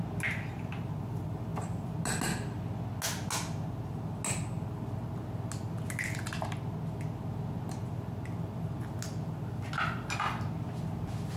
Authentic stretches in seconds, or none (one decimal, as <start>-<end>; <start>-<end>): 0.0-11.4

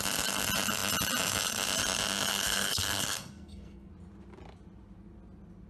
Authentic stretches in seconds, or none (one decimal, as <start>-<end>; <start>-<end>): 0.0-2.3; 3.9-5.7

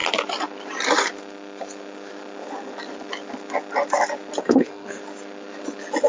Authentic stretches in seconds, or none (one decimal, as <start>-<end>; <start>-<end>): 0.0-4.4; 5.0-6.1